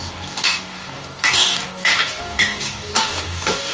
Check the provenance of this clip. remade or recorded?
remade